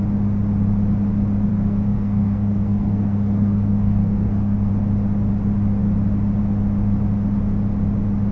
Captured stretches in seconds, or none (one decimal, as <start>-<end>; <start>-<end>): 0.0-1.5; 4.7-8.3